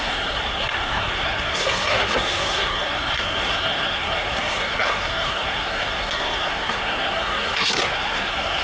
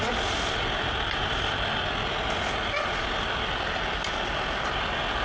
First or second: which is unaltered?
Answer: second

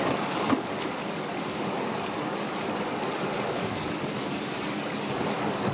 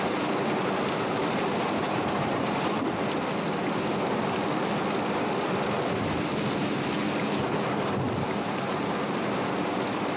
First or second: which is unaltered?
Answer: second